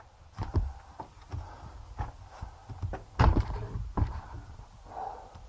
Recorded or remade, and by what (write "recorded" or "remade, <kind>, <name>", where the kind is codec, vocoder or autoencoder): recorded